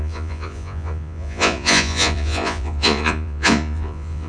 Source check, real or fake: fake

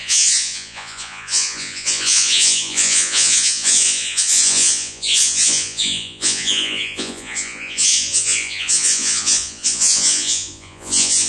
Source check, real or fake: fake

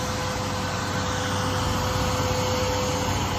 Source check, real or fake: real